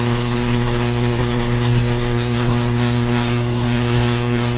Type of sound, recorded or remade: remade